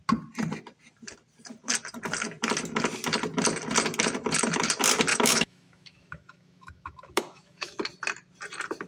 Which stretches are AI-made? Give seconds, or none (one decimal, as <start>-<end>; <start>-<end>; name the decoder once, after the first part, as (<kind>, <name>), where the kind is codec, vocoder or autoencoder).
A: 5.1-7.8 (autoencoder, DAC-VAE)